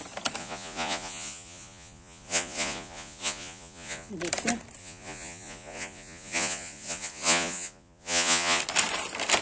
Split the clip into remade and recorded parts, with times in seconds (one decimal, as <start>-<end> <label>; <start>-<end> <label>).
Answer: 0.0-0.4 recorded; 0.4-4.1 remade; 4.1-4.8 recorded; 4.8-8.6 remade; 8.6-9.4 recorded

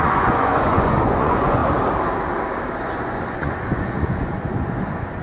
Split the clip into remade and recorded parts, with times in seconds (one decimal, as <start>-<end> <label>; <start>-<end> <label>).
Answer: 0.0-1.6 remade; 1.6-2.8 recorded; 2.8-5.2 remade

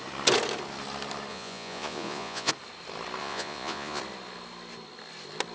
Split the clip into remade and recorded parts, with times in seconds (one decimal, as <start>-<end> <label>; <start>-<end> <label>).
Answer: 0.0-1.3 recorded; 1.3-2.5 remade; 2.5-3.2 recorded; 3.2-4.0 remade; 4.0-5.5 recorded